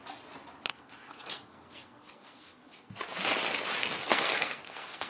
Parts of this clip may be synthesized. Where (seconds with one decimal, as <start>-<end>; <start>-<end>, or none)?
0.7-3.0; 3.8-5.1